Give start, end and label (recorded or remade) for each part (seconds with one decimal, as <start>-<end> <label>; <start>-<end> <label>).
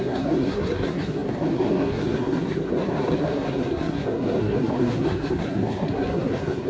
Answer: 0.0-6.7 remade